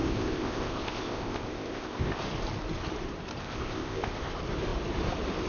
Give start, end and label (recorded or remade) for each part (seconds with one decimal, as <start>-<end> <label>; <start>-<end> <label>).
0.0-2.2 remade; 2.2-3.4 recorded; 3.4-4.3 remade; 4.3-5.5 recorded